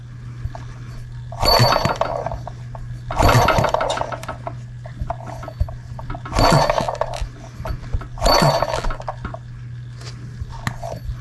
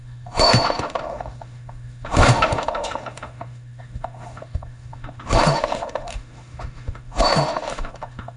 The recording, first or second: first